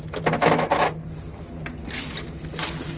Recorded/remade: recorded